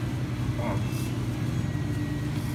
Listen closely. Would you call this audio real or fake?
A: real